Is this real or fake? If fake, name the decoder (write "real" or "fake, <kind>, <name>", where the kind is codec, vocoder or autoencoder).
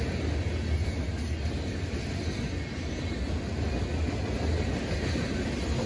real